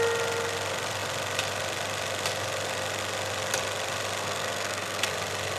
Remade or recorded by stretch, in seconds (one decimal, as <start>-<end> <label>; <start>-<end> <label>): 0.0-4.2 recorded; 4.2-5.1 remade; 5.1-5.6 recorded